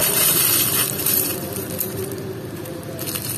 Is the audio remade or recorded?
remade